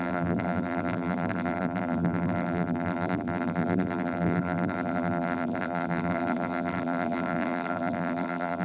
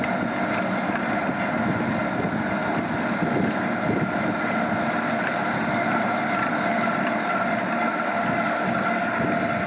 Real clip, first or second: second